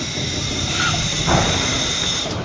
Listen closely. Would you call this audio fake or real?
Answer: fake